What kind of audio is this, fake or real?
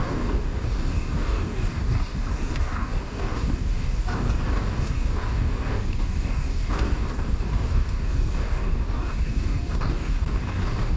fake